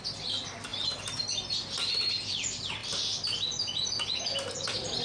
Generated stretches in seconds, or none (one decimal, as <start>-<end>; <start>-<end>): none